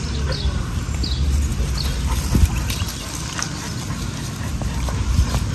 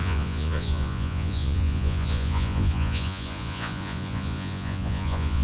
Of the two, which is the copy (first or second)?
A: second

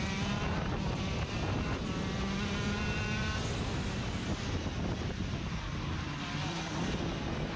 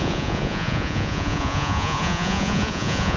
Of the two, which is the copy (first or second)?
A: second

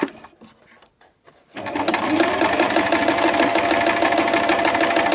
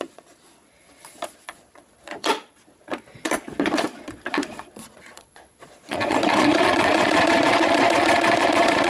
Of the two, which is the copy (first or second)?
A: second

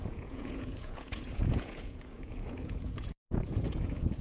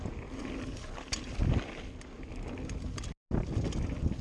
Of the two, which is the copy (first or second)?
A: first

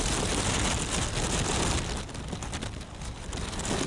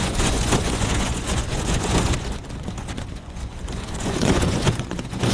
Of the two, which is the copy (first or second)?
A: second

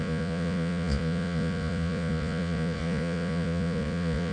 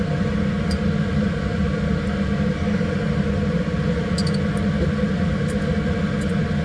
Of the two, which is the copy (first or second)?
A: first